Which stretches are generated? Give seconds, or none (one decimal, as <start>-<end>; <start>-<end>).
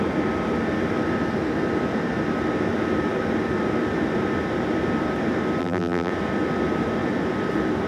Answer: 5.6-6.1